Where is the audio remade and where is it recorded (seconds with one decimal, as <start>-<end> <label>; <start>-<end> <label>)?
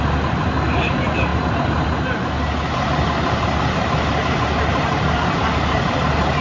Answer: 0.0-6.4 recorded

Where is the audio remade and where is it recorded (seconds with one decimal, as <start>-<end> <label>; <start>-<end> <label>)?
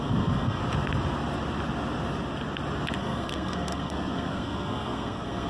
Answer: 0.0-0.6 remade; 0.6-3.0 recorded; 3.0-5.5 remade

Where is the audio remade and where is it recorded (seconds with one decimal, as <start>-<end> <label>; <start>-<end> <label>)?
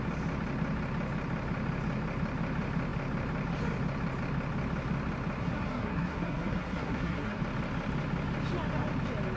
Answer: 0.0-5.4 recorded; 5.4-7.4 remade; 7.4-9.4 recorded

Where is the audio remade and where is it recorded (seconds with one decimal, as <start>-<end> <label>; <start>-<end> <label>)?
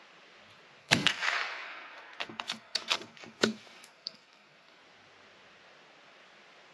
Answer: 0.0-0.8 recorded; 0.8-4.8 remade; 4.8-6.7 recorded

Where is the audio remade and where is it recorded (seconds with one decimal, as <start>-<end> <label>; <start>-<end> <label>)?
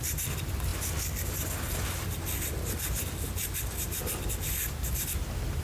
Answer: 0.0-5.6 recorded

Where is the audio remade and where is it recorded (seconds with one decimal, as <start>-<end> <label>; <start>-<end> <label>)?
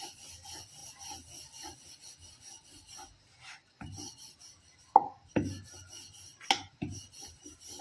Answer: 0.0-7.8 recorded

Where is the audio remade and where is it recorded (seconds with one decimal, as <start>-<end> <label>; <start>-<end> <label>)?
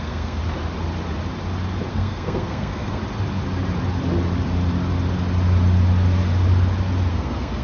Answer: 0.0-0.4 remade; 0.4-1.9 recorded; 1.9-3.0 remade; 3.0-7.1 recorded; 7.1-7.6 remade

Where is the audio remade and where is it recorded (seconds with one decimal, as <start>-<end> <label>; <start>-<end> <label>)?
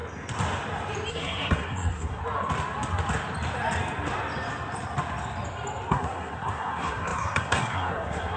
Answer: 0.0-1.1 recorded; 1.1-2.2 remade; 2.2-5.9 recorded; 5.9-8.4 remade